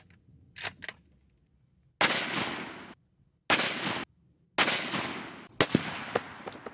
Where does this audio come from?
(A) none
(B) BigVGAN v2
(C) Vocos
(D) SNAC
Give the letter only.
A